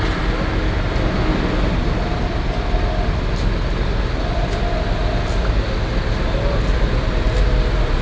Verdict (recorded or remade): recorded